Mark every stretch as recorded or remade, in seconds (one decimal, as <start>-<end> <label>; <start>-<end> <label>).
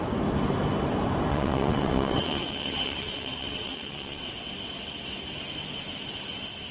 0.0-1.3 recorded; 1.3-4.3 remade; 4.3-6.7 recorded